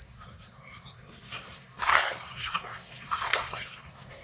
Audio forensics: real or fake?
fake